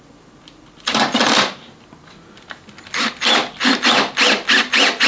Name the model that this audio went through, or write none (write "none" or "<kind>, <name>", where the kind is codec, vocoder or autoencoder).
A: none